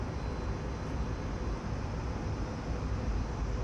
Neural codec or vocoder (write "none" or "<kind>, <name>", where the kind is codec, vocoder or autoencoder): none